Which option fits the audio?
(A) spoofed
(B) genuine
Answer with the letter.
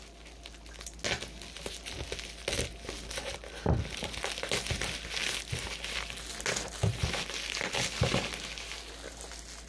B